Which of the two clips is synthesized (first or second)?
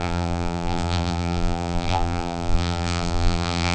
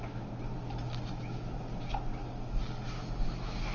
first